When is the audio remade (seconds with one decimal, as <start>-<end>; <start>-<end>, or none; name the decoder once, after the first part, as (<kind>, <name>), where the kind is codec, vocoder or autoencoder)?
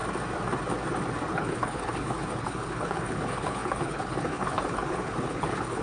1.3-5.8 (codec, HILCodec)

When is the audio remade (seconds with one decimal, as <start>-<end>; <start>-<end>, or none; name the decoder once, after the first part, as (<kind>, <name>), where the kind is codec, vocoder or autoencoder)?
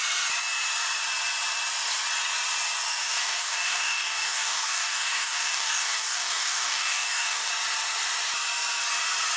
3.0-7.5 (codec, DAC)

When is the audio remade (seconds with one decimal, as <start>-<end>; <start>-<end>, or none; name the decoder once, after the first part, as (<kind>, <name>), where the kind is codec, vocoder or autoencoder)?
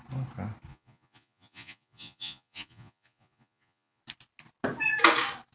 0.7-4.0 (vocoder, Vocos)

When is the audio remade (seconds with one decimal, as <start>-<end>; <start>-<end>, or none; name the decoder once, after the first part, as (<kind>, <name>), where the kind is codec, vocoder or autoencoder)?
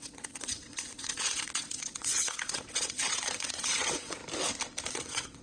0.0-4.2 (vocoder, WaveNeXt); 4.9-5.4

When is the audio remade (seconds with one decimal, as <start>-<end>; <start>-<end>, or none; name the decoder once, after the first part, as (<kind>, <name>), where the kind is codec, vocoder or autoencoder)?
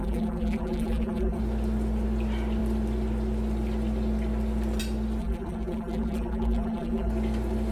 0.0-1.4 (vocoder, BigVGAN v2); 5.2-7.1